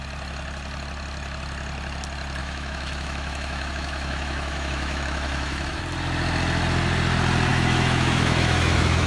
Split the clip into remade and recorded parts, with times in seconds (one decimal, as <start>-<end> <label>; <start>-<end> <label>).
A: 0.0-2.4 recorded; 2.4-5.8 remade; 5.8-7.5 recorded; 7.5-9.1 remade